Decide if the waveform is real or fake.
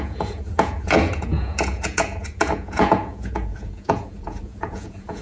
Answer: fake